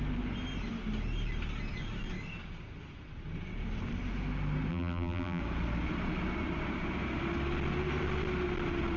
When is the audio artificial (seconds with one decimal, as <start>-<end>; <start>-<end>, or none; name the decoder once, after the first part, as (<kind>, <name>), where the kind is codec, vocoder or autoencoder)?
4.7-5.4 (vocoder, BigVGAN v2)